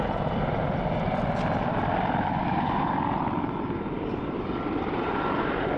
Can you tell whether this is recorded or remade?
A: recorded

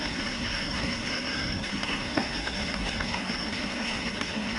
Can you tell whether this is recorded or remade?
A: remade